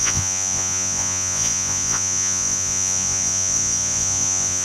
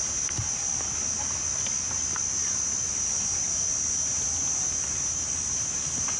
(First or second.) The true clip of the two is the second